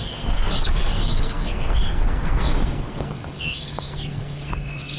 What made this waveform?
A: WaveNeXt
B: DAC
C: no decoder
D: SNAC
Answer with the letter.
D